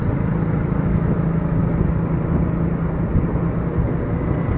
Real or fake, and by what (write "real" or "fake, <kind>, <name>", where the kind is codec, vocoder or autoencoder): real